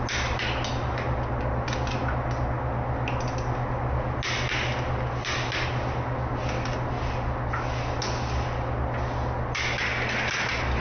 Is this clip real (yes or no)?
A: yes